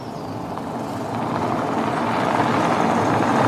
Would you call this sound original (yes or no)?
yes